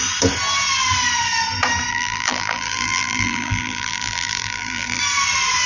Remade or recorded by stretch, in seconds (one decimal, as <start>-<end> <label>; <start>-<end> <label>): 0.0-1.9 recorded; 1.9-5.0 remade; 5.0-5.7 recorded